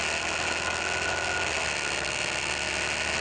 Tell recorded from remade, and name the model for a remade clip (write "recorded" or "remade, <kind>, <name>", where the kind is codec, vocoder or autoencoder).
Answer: recorded